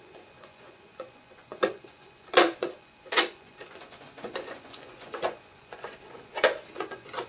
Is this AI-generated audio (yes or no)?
yes